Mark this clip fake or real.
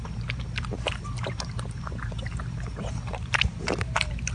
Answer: fake